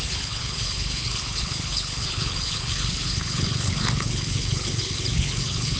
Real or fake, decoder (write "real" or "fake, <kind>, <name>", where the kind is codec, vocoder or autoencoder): fake, codec, HILCodec